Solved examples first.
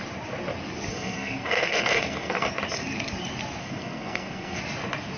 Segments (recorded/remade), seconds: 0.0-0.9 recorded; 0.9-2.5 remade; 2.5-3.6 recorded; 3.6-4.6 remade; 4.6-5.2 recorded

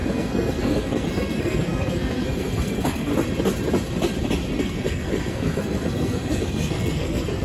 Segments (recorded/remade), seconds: 0.0-3.1 remade; 3.1-4.6 recorded; 4.6-7.4 remade

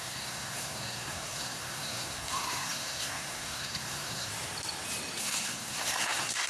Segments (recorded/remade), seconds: 0.0-4.3 remade; 4.3-5.2 recorded; 5.2-6.5 remade